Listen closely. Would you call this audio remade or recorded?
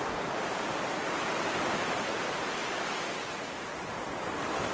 recorded